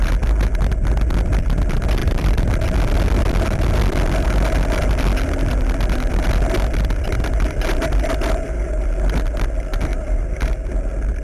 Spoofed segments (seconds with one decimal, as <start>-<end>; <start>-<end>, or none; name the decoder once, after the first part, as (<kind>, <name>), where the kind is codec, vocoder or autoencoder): 2.0-2.5 (vocoder, BigVGAN v2); 9.9-10.5